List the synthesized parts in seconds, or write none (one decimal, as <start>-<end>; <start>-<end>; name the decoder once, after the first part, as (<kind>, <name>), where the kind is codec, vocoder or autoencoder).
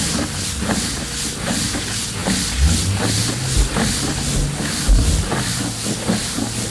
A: none